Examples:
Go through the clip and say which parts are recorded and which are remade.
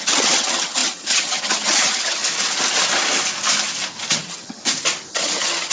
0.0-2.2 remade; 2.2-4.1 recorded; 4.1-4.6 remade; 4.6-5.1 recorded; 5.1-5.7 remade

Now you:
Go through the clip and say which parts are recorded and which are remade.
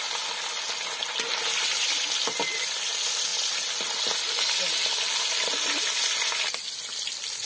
0.0-7.5 recorded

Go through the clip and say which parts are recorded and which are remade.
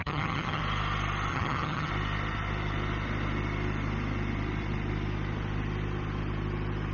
0.0-0.6 remade; 0.6-1.3 recorded; 1.3-1.9 remade; 1.9-6.9 recorded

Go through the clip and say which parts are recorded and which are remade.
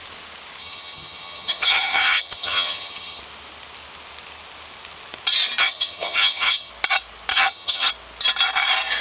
0.0-0.6 recorded; 0.6-3.2 remade; 3.2-5.6 recorded; 5.6-6.7 remade; 6.7-7.3 recorded; 7.3-7.9 remade; 7.9-9.0 recorded